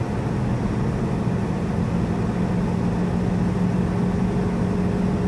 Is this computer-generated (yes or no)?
no